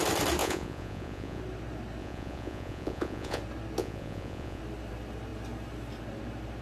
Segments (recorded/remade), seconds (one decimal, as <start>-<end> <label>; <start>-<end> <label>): 0.0-0.4 recorded; 0.4-1.4 remade; 1.4-2.0 recorded; 2.0-3.4 remade; 3.4-3.8 recorded; 3.8-4.6 remade; 4.6-6.6 recorded